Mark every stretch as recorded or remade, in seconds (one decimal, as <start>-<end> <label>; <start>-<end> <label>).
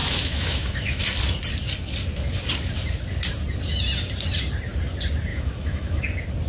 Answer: 0.0-1.0 remade; 1.0-5.3 recorded; 5.3-6.0 remade; 6.0-6.5 recorded